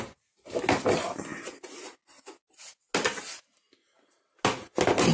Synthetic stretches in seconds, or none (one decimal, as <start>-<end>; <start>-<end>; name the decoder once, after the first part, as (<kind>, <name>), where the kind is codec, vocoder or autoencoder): none